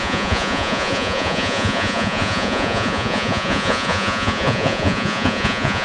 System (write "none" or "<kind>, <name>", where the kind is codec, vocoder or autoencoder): vocoder, Vocos